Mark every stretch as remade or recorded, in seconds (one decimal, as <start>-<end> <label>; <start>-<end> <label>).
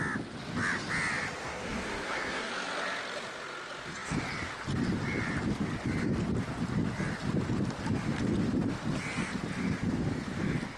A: 0.0-1.4 recorded; 1.4-2.5 remade; 2.5-10.8 recorded